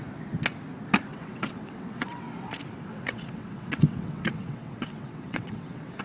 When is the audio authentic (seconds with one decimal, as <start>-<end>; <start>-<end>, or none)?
0.0-1.1; 2.2-2.9